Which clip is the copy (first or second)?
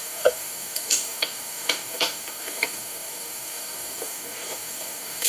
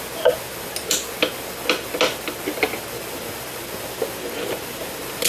first